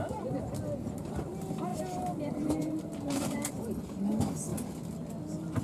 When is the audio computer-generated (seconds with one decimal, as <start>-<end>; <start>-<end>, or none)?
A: 1.7-3.5